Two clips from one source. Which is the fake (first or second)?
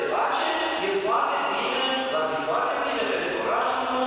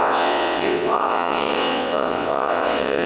second